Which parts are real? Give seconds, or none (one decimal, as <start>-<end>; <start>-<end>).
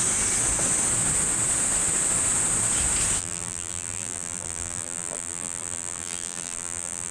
0.0-3.2